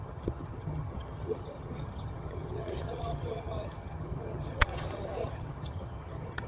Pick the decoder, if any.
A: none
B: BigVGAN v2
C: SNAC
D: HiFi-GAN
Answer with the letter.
D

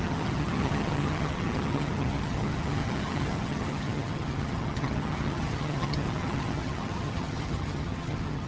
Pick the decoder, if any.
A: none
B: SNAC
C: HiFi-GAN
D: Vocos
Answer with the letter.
C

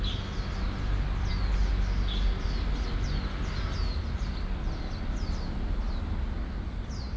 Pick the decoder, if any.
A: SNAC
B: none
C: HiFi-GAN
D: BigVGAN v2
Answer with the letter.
B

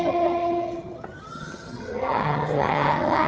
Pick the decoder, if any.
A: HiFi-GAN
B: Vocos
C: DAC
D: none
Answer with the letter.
A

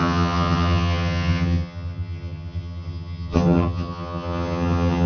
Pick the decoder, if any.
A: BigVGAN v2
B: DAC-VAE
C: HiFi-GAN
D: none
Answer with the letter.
C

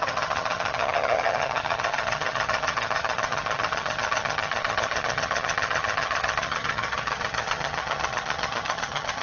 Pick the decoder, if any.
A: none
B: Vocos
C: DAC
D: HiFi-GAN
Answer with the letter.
D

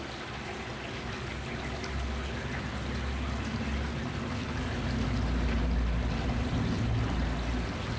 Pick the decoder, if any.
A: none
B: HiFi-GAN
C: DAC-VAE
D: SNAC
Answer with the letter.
A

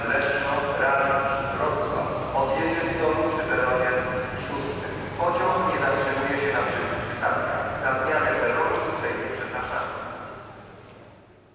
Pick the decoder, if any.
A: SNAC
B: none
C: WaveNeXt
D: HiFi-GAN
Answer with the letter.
B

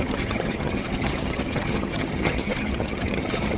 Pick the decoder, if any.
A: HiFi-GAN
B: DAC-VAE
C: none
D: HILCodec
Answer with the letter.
A